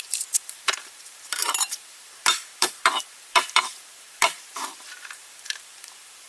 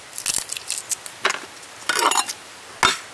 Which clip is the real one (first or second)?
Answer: second